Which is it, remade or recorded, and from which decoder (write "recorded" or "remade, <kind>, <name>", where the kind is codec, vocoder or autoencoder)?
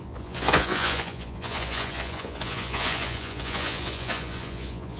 remade, vocoder, Vocos